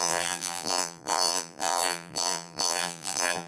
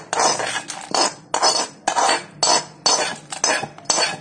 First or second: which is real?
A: second